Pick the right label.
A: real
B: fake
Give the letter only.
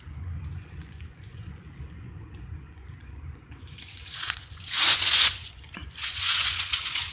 B